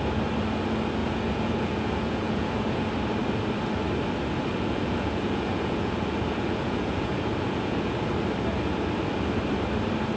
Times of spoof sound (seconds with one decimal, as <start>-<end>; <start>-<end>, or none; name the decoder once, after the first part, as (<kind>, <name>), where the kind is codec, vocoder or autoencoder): 1.0-2.8 (vocoder, Vocos); 4.5-8.1